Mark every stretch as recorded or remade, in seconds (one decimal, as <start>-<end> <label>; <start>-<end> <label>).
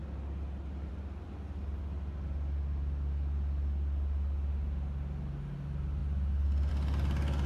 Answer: 0.0-7.5 recorded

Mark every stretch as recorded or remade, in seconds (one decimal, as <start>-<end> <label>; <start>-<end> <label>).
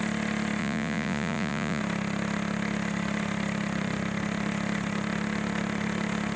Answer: 0.0-0.6 recorded; 0.6-1.8 remade; 1.8-6.4 recorded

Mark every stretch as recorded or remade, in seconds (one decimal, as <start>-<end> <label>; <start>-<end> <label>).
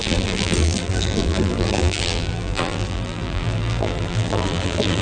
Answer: 0.0-5.0 remade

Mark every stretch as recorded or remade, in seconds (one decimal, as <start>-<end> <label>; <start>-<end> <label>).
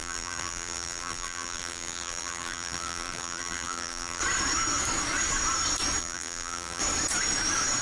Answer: 0.0-4.2 remade; 4.2-6.0 recorded; 6.0-6.8 remade; 6.8-7.8 recorded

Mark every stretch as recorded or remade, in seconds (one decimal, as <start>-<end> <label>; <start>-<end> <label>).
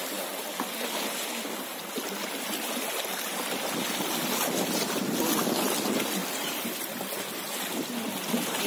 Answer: 0.0-8.7 recorded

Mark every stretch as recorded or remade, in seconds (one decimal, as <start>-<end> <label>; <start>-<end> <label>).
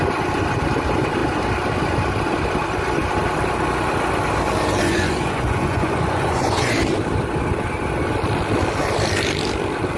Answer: 0.0-4.8 recorded; 4.8-6.5 remade; 6.5-10.0 recorded